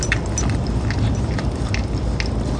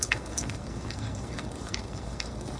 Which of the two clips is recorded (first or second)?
first